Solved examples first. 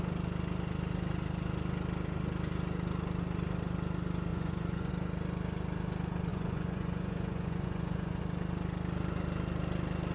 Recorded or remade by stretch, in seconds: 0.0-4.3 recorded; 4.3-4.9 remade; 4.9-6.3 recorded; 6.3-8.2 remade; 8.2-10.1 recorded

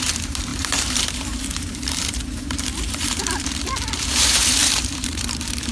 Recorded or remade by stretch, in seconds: 0.0-5.7 remade

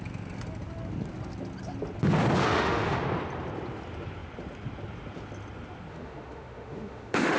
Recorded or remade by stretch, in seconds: 0.0-2.4 recorded; 2.4-3.0 remade; 3.0-5.9 recorded; 5.9-7.4 remade

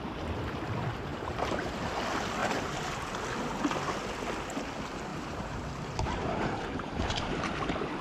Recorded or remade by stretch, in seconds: 0.0-1.1 recorded; 1.1-1.9 remade; 1.9-5.1 recorded; 5.1-7.5 remade; 7.5-8.0 recorded